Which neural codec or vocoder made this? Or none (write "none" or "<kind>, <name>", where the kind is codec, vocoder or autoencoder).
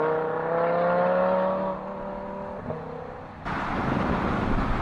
none